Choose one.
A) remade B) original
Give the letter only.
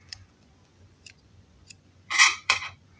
A